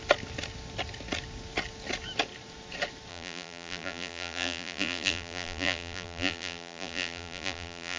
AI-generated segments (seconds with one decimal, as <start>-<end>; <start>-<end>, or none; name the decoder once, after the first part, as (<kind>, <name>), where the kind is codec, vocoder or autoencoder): 3.1-8.0 (vocoder, BigVGAN v2)